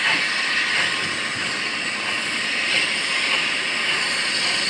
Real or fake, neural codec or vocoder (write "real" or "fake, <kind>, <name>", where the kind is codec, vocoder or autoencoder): real